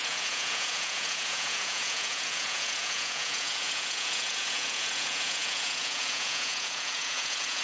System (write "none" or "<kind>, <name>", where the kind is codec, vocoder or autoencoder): vocoder, Vocos